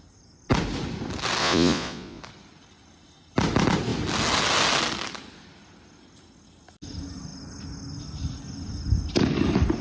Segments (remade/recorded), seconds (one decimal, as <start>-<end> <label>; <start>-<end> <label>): 0.0-1.4 recorded; 1.4-2.2 remade; 2.2-9.8 recorded